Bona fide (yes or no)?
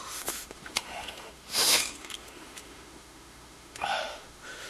no